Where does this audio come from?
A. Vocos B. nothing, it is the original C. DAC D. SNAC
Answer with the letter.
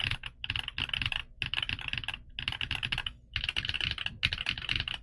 B